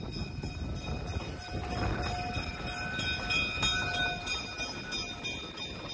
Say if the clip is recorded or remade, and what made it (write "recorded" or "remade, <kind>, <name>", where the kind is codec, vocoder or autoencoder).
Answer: recorded